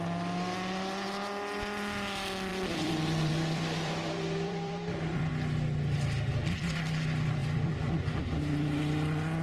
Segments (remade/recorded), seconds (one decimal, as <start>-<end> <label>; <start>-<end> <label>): 0.0-2.5 recorded; 2.5-5.3 remade; 5.3-7.4 recorded; 7.4-8.2 remade; 8.2-9.4 recorded